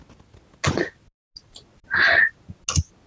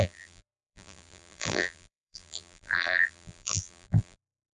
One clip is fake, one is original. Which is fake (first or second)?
second